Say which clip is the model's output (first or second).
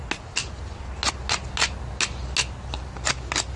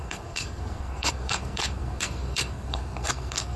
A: second